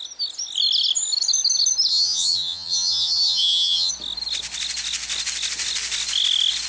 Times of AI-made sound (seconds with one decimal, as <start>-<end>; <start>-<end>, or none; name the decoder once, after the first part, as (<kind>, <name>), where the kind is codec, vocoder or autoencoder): 1.9-3.9 (vocoder, HiFi-GAN)